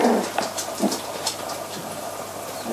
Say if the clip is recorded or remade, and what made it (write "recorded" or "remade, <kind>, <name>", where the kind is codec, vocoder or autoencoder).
recorded